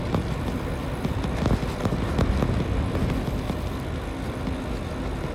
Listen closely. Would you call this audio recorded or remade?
recorded